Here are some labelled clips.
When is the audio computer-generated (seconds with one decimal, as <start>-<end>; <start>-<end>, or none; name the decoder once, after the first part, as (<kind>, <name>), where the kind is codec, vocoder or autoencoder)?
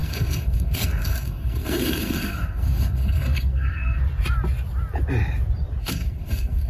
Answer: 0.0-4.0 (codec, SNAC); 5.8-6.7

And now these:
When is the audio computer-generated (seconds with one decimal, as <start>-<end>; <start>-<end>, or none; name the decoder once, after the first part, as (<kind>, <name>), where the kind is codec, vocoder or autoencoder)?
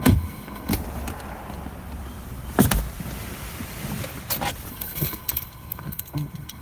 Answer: 0.0-0.7 (codec, SNAC); 4.7-6.6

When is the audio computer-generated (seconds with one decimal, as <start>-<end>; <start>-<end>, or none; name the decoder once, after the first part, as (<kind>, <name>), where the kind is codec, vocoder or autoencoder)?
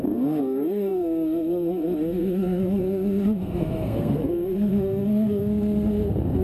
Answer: 0.0-6.4 (codec, SNAC)